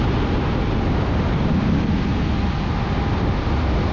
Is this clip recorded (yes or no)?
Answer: yes